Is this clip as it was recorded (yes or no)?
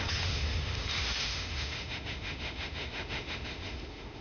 no